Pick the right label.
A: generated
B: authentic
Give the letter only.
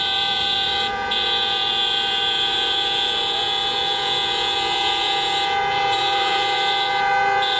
A